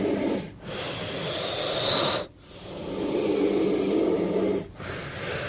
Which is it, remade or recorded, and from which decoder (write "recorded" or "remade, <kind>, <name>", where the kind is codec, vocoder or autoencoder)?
recorded